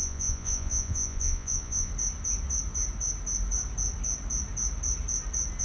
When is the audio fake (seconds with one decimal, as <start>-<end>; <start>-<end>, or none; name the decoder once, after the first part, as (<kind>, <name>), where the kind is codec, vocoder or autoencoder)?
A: 0.0-1.9 (vocoder, Vocos)